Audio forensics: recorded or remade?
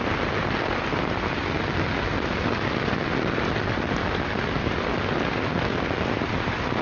recorded